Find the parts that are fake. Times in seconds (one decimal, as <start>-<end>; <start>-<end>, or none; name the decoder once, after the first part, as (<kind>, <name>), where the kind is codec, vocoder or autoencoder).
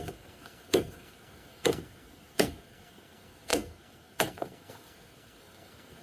0.0-6.0 (codec, SNAC)